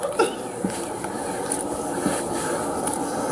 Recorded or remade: recorded